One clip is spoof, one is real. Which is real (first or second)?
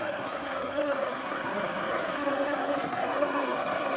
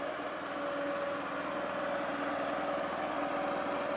second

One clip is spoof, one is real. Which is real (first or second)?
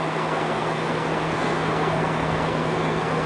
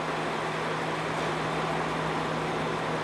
second